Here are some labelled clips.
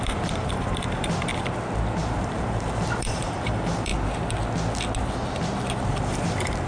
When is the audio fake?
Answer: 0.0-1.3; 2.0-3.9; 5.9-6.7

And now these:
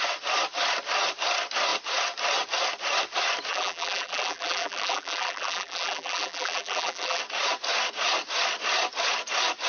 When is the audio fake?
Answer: 3.5-7.2

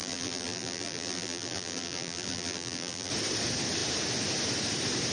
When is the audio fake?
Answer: 0.0-3.1

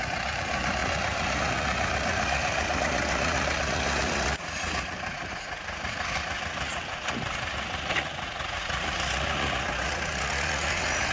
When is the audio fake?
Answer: 0.0-11.1